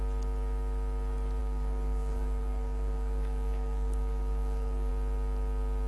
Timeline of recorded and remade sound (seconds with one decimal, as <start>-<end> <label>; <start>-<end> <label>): 0.0-1.4 recorded; 1.4-4.9 remade; 4.9-5.9 recorded